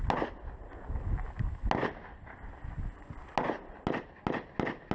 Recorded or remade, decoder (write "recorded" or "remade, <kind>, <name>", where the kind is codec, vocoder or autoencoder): recorded